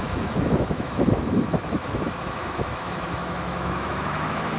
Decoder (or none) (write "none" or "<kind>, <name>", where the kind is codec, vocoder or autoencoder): autoencoder, DAC-VAE